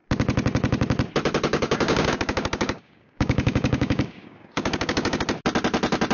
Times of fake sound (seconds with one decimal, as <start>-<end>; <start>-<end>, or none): 1.5-5.2